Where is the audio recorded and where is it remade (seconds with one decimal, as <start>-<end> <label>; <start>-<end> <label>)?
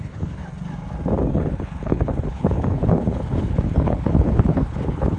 0.0-0.4 remade; 0.4-1.3 recorded; 1.3-5.2 remade